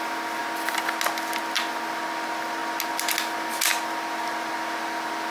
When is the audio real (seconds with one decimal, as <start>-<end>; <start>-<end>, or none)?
0.0-5.3